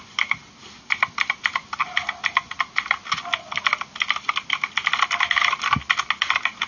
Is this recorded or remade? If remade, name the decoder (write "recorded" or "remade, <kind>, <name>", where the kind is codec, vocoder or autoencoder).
recorded